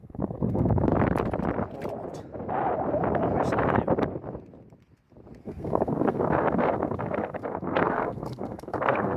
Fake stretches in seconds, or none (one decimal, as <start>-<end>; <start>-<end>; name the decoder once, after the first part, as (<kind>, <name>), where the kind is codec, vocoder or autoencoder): 0.0-0.9 (codec, SNAC); 5.4-9.2